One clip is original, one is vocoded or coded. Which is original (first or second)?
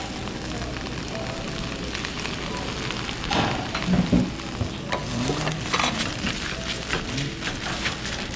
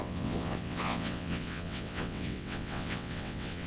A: first